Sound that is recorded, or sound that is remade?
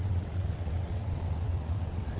remade